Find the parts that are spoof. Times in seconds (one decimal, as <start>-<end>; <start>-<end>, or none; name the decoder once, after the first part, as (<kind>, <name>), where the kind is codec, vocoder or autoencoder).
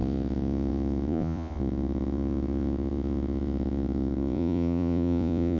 0.0-5.6 (vocoder, Vocos)